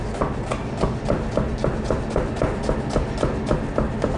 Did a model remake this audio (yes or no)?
no